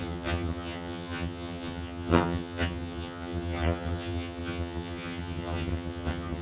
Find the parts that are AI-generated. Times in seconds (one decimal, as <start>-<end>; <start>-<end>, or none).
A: 0.0-6.4